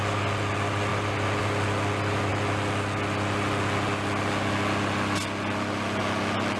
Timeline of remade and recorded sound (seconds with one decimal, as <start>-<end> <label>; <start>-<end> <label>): 0.0-6.6 recorded